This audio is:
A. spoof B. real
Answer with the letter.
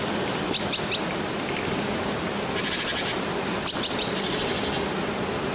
B